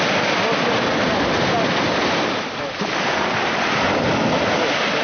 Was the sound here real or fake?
fake